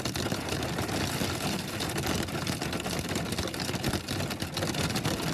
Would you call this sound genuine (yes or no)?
yes